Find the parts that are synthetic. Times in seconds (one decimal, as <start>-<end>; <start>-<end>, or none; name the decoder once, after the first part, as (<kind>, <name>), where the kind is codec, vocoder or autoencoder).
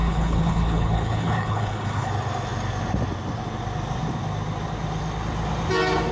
0.0-2.1 (codec, HILCodec)